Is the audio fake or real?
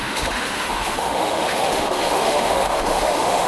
fake